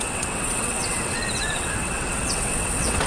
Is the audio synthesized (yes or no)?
yes